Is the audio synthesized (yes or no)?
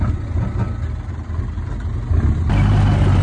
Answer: no